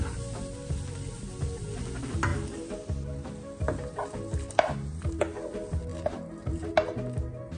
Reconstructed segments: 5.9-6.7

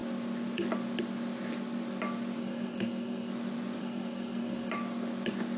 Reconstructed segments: 2.4-3.3; 3.8-4.7

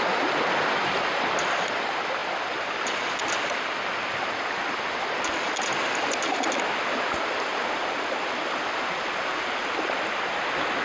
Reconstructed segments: none